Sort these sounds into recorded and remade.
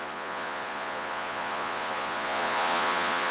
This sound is remade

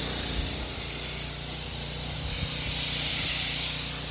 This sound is recorded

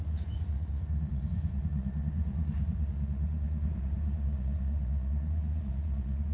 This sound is remade